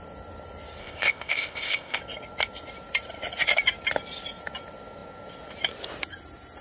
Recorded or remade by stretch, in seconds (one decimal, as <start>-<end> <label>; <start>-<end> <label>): 0.0-0.8 recorded; 0.8-2.0 remade; 2.0-6.6 recorded